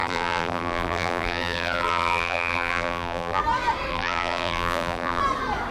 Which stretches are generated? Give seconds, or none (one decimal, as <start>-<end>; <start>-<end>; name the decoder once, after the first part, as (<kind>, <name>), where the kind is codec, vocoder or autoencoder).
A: 0.0-3.4 (vocoder, BigVGAN v2); 3.9-5.2